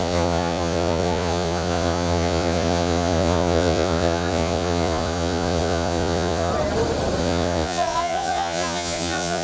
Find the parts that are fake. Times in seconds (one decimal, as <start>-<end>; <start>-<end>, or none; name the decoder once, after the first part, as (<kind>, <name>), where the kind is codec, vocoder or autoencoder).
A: 0.0-6.5 (vocoder, Vocos); 7.2-9.4